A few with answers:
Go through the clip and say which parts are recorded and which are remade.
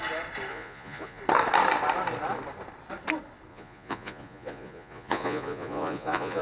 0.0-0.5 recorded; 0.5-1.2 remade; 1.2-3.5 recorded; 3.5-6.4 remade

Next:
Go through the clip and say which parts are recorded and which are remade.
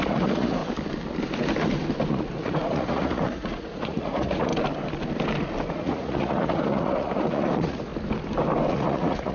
0.0-0.6 remade; 0.6-2.1 recorded; 2.1-4.5 remade; 4.5-5.7 recorded; 5.7-7.9 remade; 7.9-8.7 recorded; 8.7-9.3 remade